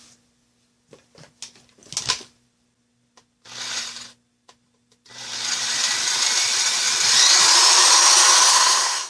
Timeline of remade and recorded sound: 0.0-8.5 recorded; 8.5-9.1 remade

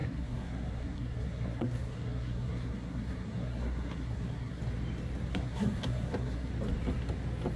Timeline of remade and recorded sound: 0.0-4.6 remade; 4.6-5.3 recorded; 5.3-6.5 remade; 6.5-7.6 recorded

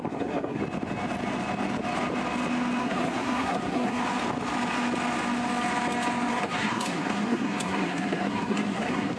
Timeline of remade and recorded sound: 0.0-0.6 remade; 0.6-2.8 recorded; 2.8-4.0 remade; 4.0-6.3 recorded; 6.3-9.2 remade

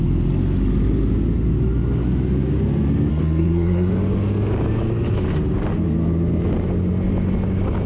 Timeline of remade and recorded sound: 0.0-3.1 recorded; 3.1-3.9 remade; 3.9-7.9 recorded